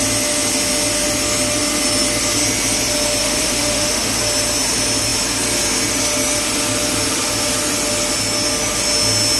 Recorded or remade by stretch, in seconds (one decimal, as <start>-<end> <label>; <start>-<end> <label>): 0.0-3.2 recorded; 3.2-4.2 remade; 4.2-9.4 recorded